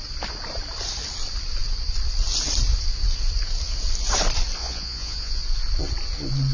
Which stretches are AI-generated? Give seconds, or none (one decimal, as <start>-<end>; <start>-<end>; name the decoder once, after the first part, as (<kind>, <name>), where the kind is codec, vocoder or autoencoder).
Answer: 4.6-5.4 (vocoder, Vocos)